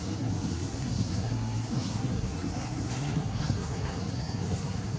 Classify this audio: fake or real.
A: fake